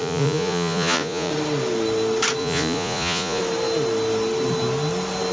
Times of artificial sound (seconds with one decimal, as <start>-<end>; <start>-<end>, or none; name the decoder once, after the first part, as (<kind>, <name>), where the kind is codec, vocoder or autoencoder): 0.0-1.3 (vocoder, Vocos); 2.4-3.4